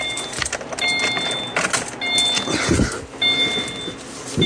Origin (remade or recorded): recorded